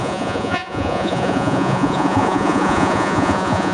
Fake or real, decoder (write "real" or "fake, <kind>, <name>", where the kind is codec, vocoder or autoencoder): fake, vocoder, Vocos